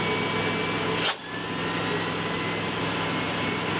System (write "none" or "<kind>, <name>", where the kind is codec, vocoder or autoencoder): none